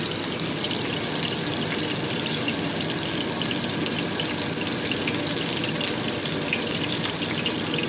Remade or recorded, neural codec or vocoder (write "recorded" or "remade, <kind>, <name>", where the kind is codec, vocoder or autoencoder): recorded